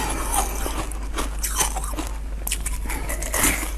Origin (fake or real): real